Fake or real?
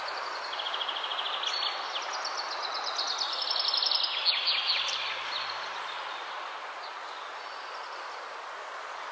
real